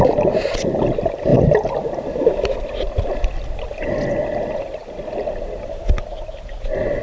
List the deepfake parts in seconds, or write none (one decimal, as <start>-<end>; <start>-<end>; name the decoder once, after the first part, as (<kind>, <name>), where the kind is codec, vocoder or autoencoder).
1.3-3.9 (vocoder, BigVGAN v2)